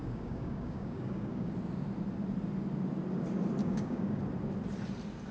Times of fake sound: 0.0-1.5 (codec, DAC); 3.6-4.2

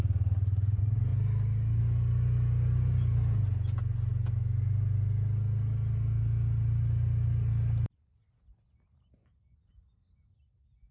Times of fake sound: none

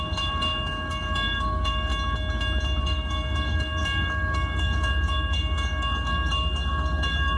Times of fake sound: 0.0-1.9 (codec, DAC); 2.8-7.4

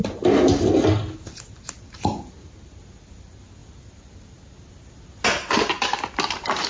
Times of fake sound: none

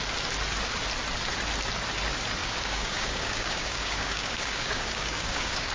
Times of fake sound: 2.4-5.7 (codec, DAC)